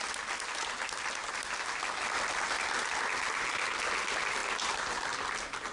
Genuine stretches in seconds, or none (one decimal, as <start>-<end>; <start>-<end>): 0.0-5.7